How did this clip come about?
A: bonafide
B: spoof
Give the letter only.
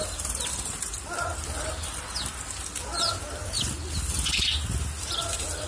A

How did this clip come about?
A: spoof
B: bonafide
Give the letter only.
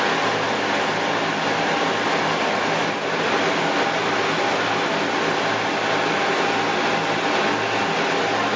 B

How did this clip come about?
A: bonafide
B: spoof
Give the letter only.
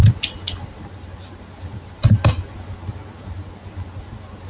A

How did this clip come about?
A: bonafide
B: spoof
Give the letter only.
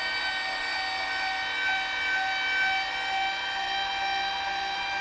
A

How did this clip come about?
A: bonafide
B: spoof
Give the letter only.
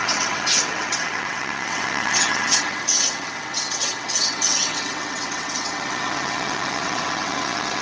B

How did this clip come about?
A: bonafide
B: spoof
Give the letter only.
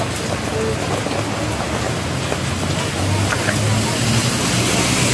A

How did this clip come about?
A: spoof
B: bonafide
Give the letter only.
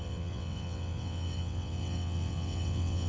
A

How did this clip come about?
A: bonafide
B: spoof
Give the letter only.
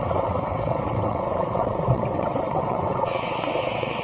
B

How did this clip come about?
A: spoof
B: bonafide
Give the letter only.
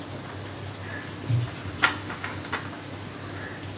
B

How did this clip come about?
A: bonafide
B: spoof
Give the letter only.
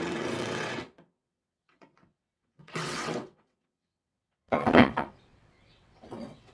B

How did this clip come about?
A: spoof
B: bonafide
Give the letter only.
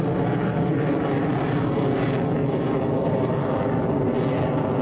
B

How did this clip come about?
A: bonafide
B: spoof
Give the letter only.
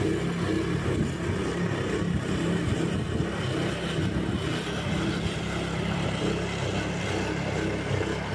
A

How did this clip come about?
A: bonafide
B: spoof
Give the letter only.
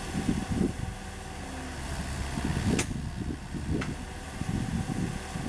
A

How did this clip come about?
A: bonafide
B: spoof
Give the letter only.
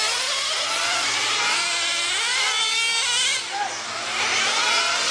A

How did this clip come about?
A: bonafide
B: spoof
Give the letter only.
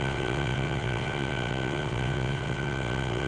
B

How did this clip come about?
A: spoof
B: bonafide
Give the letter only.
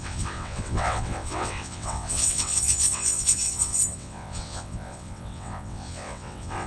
A